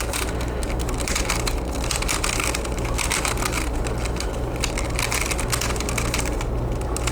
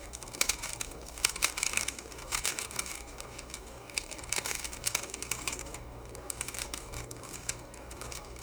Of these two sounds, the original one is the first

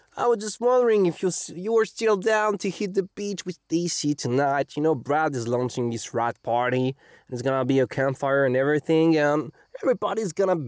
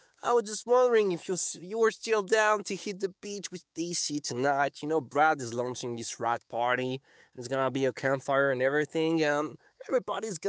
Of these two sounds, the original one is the first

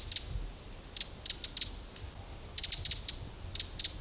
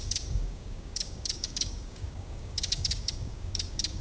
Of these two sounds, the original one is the first